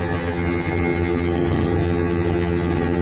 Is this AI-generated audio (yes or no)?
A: yes